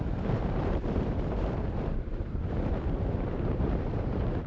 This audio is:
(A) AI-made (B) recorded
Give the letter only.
A